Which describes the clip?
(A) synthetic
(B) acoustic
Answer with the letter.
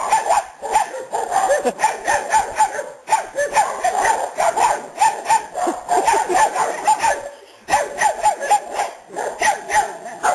B